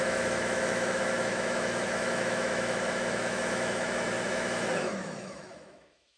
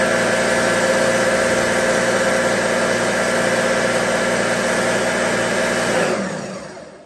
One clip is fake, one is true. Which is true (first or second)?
second